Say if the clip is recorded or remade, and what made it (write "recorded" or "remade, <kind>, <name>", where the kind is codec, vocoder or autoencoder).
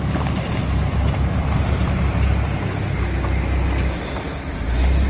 recorded